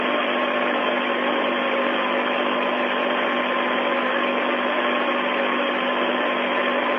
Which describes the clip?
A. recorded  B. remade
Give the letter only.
A